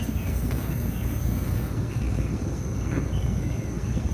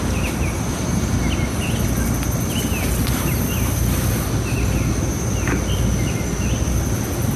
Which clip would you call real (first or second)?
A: second